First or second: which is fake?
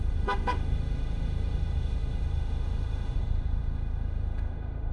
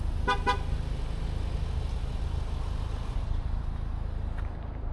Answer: first